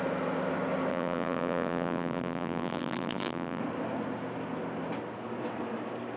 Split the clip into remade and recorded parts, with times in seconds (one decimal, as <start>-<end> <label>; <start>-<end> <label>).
0.0-0.9 recorded; 0.9-3.6 remade; 3.6-6.2 recorded